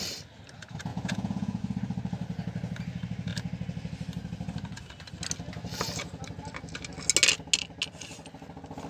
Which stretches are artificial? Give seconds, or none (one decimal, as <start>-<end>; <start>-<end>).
0.9-1.6